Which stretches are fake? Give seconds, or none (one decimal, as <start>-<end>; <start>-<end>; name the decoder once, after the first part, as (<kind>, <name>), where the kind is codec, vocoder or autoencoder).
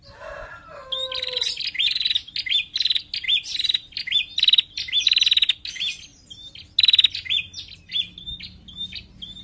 none